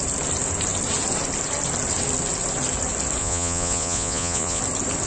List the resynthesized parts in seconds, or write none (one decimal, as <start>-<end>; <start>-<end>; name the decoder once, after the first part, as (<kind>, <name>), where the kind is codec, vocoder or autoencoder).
3.2-4.6 (vocoder, Vocos)

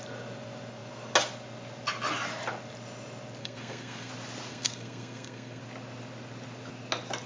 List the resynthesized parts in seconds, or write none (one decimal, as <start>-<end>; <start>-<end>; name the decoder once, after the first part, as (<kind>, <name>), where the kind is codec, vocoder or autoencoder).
3.4-4.1 (codec, SNAC); 4.5-5.6

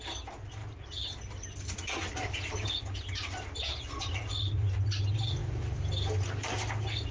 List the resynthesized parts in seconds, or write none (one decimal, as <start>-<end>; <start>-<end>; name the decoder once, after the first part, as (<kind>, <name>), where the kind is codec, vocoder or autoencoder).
none

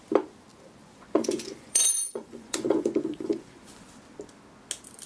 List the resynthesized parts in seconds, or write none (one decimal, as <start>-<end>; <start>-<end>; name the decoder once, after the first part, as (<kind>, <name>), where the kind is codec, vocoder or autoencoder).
0.8-3.9 (vocoder, Vocos)